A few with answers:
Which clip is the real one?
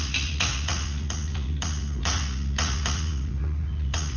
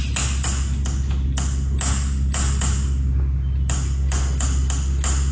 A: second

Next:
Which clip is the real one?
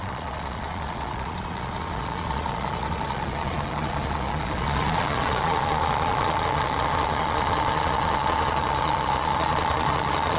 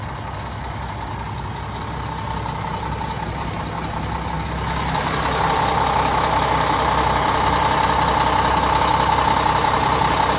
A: second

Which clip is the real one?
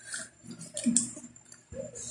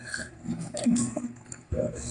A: first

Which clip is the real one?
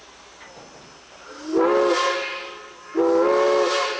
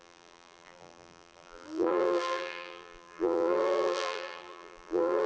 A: first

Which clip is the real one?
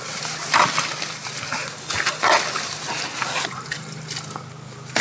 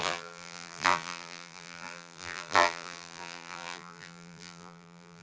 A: first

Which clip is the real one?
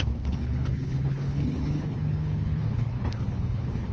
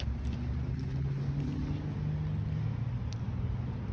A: second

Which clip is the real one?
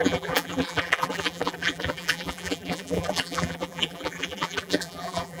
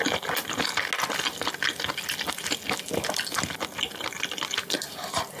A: second